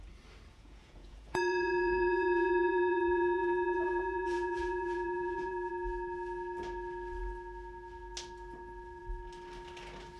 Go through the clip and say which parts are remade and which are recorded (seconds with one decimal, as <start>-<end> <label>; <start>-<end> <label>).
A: 0.0-0.5 recorded; 0.5-5.7 remade; 5.7-10.2 recorded